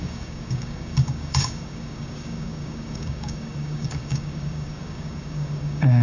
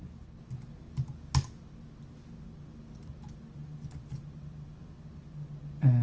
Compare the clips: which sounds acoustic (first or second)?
second